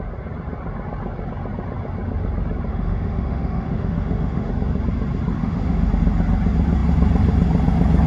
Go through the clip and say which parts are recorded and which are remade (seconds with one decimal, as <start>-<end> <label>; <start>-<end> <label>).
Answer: 0.0-2.7 recorded; 2.7-4.5 remade; 4.5-5.4 recorded; 5.4-5.9 remade; 5.9-8.1 recorded